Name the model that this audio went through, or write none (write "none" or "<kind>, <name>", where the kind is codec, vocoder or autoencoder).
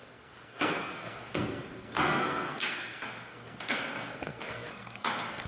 codec, SNAC